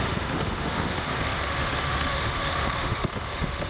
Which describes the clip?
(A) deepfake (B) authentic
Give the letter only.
A